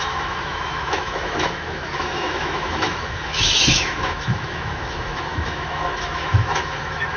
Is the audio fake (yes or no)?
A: yes